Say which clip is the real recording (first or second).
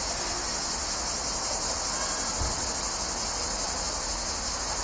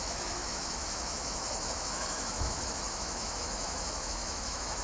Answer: first